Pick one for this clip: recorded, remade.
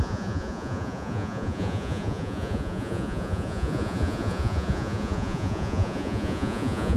remade